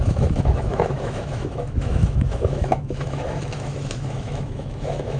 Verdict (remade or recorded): remade